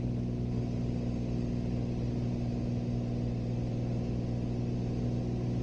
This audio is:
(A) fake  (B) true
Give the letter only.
B